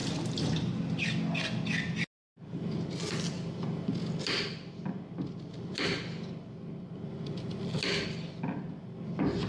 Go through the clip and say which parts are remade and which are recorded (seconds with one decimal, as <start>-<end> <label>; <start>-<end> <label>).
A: 0.0-9.5 recorded